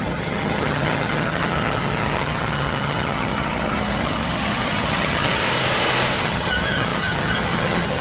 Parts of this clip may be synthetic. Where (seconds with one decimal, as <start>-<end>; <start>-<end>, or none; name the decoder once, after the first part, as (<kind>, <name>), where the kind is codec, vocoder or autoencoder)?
0.0-5.4 (vocoder, HiFi-GAN); 6.2-8.0